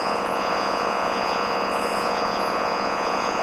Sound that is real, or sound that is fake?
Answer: fake